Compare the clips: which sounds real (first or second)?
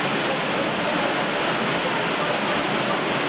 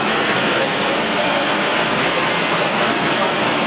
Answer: first